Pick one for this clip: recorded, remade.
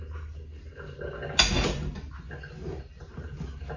recorded